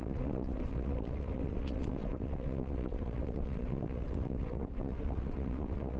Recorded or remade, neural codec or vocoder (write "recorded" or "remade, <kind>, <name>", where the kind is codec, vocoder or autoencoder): remade, vocoder, WaveNeXt